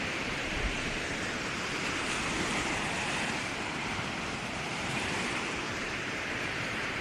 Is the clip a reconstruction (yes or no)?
yes